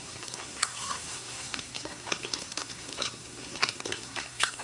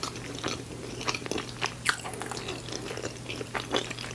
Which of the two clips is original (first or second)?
second